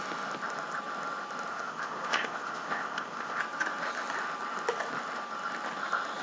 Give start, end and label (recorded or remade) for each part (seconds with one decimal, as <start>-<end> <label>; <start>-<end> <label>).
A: 0.0-1.5 recorded; 1.5-3.4 remade; 3.4-6.2 recorded